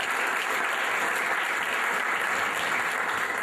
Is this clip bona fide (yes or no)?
yes